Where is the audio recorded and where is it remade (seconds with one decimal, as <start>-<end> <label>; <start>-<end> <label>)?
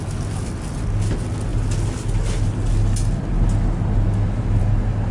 0.0-5.1 recorded